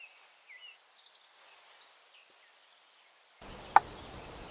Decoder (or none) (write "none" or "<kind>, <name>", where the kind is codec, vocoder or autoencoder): none